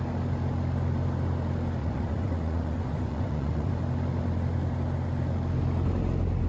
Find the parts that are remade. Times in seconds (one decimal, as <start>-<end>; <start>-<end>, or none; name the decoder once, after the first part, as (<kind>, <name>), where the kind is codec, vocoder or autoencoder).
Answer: 1.8-3.7 (vocoder, Vocos)